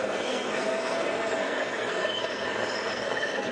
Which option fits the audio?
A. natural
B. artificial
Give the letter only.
B